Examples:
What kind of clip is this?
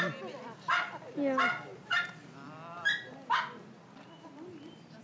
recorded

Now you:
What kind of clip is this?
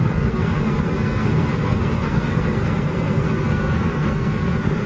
remade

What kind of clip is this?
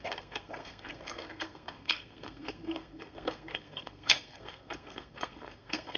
remade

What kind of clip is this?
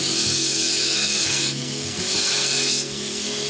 remade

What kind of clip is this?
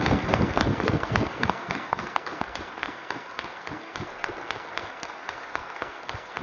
remade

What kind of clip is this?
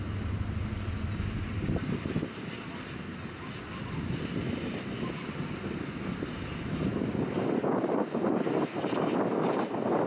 recorded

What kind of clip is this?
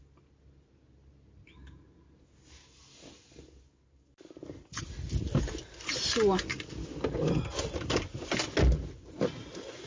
recorded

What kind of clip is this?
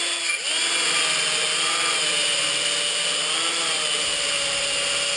recorded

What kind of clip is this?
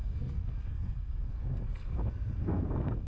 remade